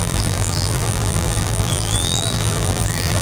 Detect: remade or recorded remade